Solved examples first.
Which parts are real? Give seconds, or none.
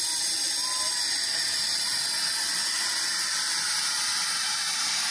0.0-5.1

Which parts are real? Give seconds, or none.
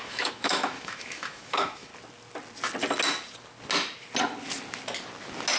1.9-5.6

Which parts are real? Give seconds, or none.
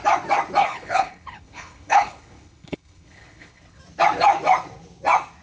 0.0-0.6; 3.8-5.4